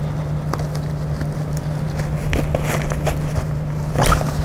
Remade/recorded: recorded